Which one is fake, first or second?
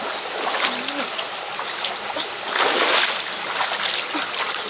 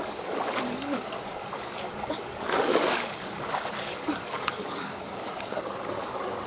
second